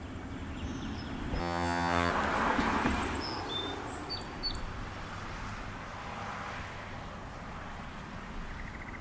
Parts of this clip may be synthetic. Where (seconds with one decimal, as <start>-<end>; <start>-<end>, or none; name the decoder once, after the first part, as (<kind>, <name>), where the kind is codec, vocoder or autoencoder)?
1.4-2.1 (vocoder, HiFi-GAN)